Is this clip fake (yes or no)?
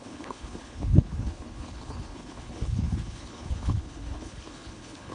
yes